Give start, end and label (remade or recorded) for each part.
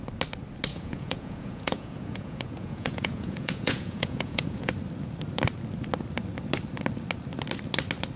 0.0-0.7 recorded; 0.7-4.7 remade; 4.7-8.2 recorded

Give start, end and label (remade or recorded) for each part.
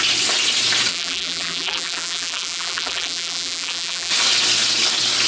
0.0-0.9 recorded; 0.9-4.1 remade; 4.1-5.3 recorded